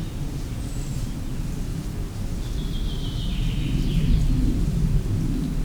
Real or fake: real